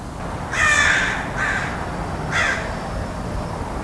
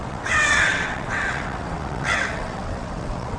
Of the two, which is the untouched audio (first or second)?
first